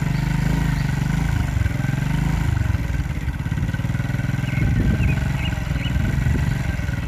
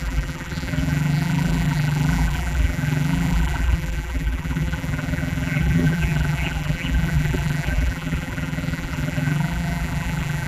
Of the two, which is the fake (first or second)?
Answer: second